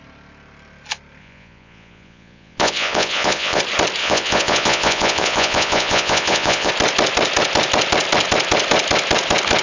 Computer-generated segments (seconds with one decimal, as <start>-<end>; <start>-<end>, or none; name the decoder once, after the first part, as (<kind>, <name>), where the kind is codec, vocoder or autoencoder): 1.2-3.6 (vocoder, Vocos); 4.0-6.7

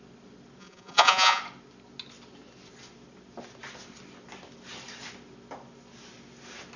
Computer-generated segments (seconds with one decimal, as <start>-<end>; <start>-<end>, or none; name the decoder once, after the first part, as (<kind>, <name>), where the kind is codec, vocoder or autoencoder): 0.6-1.4 (vocoder, Vocos)

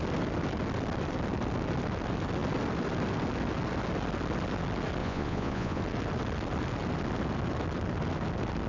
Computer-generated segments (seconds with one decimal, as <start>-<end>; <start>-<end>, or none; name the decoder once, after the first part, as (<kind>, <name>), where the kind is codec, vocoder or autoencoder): 5.0-5.8 (vocoder, Vocos)

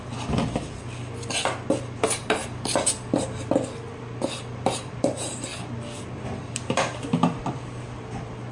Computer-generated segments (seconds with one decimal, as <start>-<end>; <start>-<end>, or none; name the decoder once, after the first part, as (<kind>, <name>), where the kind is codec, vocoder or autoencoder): none